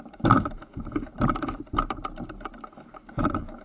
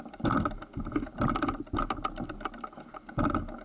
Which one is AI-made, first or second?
first